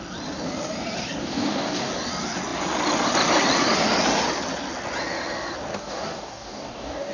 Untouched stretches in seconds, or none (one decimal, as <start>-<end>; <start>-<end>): 0.0-1.2; 1.9-5.7